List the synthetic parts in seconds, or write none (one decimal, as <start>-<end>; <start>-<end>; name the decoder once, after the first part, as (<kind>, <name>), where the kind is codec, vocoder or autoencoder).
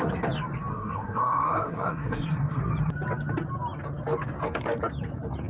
0.7-2.6 (codec, SNAC)